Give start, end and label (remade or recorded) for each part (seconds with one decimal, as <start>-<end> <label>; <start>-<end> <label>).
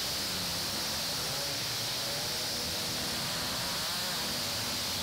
0.0-5.0 recorded